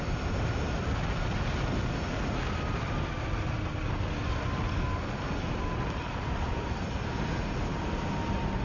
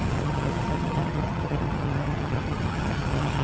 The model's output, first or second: second